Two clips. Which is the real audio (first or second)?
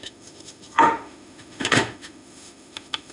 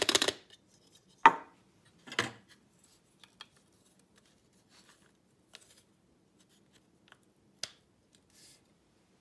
second